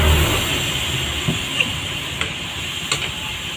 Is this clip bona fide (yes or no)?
yes